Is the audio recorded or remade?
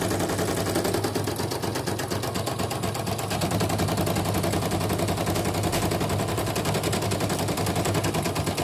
recorded